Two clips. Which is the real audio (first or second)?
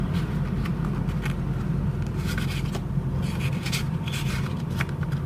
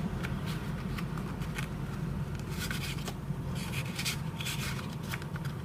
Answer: first